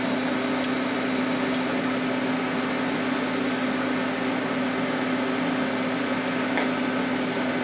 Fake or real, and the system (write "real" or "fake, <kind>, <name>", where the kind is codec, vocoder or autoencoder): real